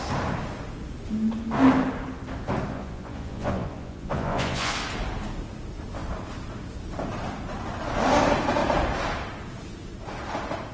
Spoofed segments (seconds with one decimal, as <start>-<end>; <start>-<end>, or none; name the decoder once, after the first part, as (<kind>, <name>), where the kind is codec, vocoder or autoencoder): 2.7-4.7 (vocoder, Vocos)

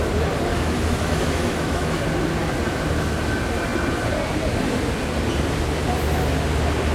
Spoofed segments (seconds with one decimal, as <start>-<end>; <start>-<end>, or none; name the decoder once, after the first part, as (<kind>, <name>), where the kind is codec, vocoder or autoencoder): 0.5-2.0 (autoencoder, DAC-VAE)

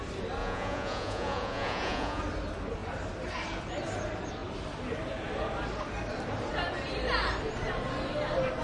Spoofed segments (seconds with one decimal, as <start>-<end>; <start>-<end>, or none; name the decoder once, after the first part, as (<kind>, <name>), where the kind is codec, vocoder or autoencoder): 0.4-2.2 (vocoder, Vocos)

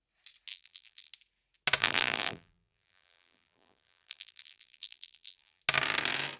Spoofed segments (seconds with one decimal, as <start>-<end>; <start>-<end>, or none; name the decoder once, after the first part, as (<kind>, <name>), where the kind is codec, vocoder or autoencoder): 0.5-1.1 (vocoder, BigVGAN v2); 1.8-5.6

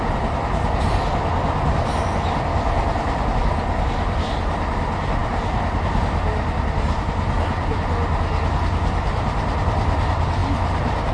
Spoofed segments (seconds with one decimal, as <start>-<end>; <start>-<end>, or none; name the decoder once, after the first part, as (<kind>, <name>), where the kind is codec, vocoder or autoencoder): none

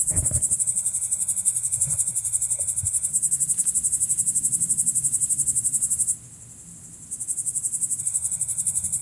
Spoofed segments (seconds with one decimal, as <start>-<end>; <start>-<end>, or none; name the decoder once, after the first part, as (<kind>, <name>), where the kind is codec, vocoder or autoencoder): 0.6-3.1 (codec, SNAC); 8.0-9.0